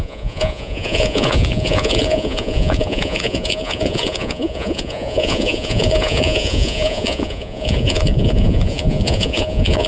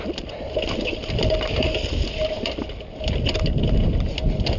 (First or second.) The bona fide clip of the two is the second